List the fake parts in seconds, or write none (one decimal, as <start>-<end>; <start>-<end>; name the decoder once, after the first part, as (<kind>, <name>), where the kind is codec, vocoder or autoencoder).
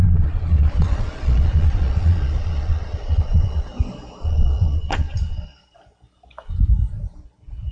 0.0-3.7 (vocoder, Vocos); 4.2-5.6